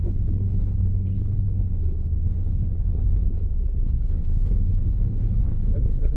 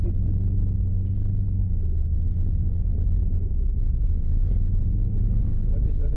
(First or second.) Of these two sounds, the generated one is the first